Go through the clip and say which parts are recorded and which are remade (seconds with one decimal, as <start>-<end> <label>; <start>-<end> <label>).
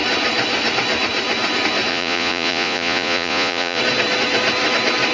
0.0-1.9 recorded; 1.9-3.8 remade; 3.8-5.1 recorded